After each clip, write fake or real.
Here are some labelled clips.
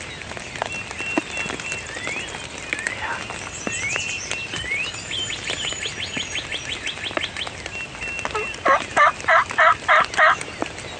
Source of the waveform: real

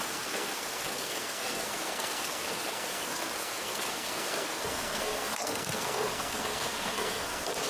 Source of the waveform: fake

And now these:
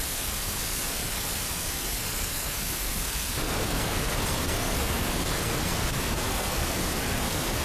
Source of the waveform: fake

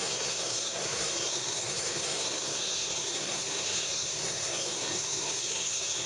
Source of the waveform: fake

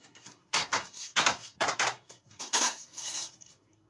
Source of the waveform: fake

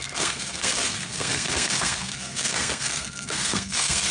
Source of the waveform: fake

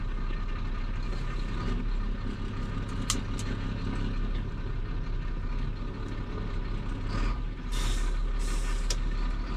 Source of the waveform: real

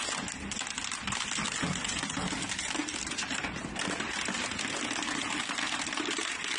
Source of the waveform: real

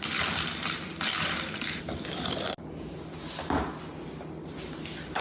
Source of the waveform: real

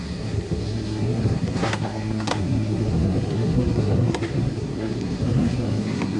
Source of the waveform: fake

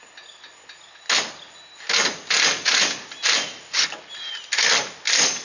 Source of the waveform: real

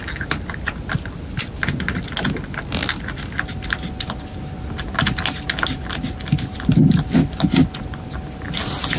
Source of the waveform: real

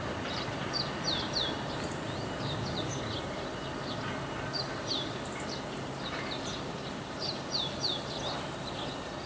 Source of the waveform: real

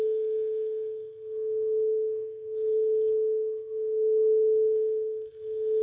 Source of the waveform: fake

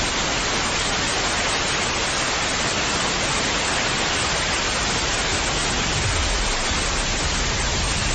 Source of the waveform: real